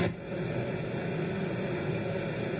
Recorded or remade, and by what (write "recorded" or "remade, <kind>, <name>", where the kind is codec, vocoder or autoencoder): recorded